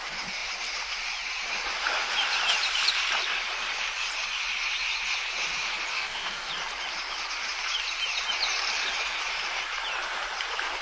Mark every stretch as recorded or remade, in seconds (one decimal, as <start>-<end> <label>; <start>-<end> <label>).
0.0-5.9 recorded; 5.9-6.5 remade; 6.5-10.8 recorded